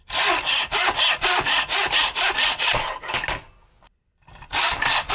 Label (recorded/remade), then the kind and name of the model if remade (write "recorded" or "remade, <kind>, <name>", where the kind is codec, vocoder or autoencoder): recorded